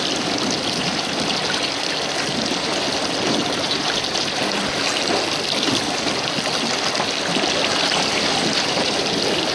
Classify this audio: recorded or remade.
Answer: recorded